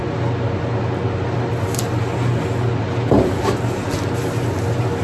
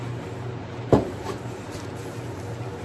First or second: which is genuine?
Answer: first